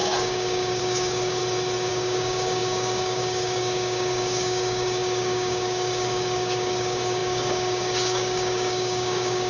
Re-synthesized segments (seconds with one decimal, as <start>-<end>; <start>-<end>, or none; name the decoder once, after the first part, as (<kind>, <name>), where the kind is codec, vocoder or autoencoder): 0.0-1.4 (codec, DAC); 1.9-9.5